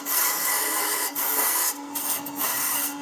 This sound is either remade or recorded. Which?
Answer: remade